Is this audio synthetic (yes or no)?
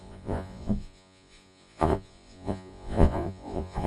yes